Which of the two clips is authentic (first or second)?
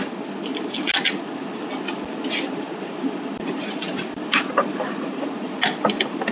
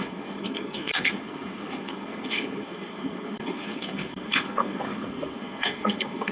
first